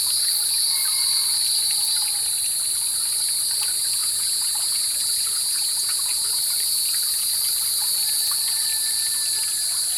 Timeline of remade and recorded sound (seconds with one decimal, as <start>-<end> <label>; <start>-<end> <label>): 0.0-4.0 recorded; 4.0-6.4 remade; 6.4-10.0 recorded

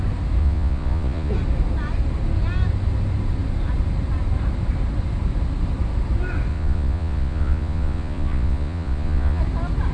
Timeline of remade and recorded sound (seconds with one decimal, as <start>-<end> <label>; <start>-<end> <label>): 0.0-0.4 recorded; 0.4-1.3 remade; 1.3-6.5 recorded; 6.5-9.4 remade; 9.4-9.9 recorded

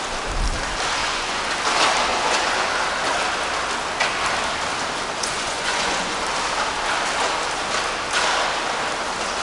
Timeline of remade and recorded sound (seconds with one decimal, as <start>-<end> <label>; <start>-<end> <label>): 0.0-1.0 recorded; 1.0-1.5 remade; 1.5-2.1 recorded; 2.1-2.7 remade; 2.7-5.2 recorded; 5.2-6.2 remade; 6.2-9.4 recorded